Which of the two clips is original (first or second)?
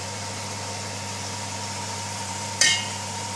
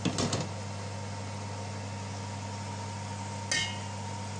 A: second